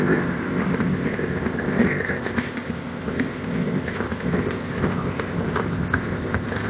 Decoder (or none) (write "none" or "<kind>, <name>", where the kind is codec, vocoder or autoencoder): codec, ZipCodec